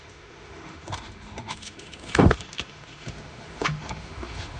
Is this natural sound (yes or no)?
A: no